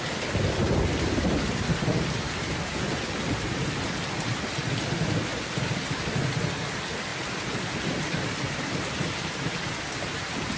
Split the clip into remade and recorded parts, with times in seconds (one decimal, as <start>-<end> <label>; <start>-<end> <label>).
0.0-5.3 recorded; 5.3-6.4 remade; 6.4-7.1 recorded; 7.1-9.0 remade; 9.0-10.6 recorded